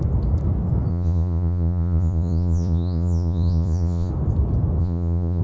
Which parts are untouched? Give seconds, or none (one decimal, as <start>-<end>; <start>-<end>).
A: 0.0-0.9; 4.1-4.8